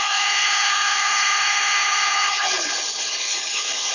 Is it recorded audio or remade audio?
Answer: remade